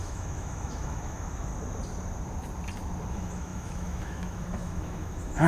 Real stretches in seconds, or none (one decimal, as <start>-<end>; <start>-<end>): 1.5-3.1